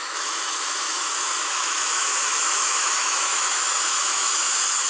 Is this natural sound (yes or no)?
no